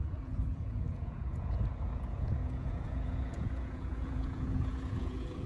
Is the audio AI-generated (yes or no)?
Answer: yes